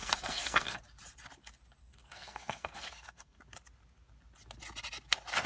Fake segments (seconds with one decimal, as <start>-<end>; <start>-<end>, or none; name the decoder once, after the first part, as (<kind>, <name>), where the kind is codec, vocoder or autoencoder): 0.0-0.8 (codec, SNAC); 1.8-3.4